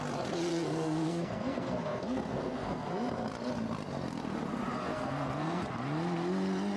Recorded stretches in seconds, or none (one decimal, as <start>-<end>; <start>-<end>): 0.0-0.5; 2.9-4.9; 5.6-6.8